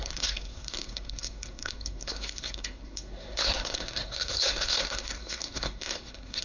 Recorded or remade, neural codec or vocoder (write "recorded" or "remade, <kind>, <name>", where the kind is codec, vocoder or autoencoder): remade, codec, SNAC